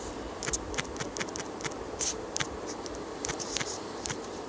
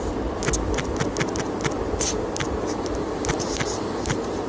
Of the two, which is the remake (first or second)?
first